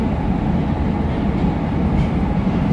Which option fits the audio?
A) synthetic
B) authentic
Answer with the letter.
B